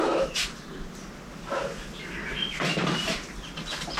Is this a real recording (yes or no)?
yes